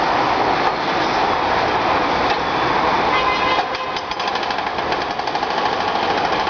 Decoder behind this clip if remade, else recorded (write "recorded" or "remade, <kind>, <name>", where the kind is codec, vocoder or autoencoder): recorded